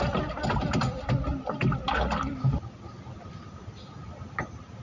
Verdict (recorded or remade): recorded